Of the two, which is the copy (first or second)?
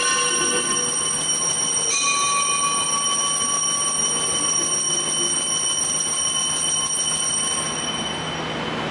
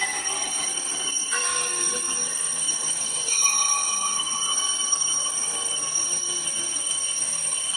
second